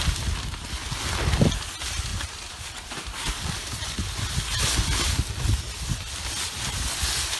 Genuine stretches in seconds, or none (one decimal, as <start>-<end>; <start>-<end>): 0.0-2.1; 3.5-7.4